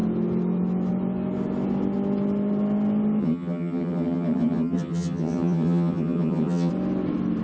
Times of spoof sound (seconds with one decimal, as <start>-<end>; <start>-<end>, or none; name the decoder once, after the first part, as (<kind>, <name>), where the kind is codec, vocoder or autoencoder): 3.2-6.7 (vocoder, HiFi-GAN)